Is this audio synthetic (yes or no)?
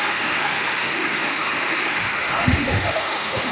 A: yes